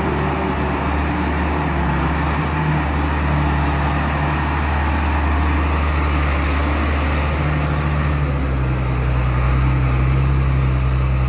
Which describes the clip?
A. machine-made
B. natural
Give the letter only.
B